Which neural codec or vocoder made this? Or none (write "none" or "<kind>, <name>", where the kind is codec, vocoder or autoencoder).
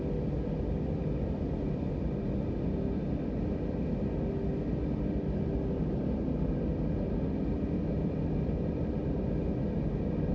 none